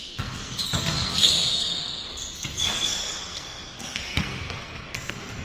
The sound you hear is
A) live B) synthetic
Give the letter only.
B